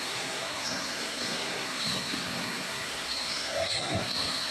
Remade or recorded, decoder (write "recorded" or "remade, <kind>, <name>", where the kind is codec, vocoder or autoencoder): remade, codec, SNAC